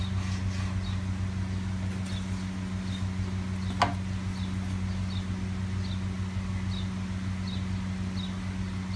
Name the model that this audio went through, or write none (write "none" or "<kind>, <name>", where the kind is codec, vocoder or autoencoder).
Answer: none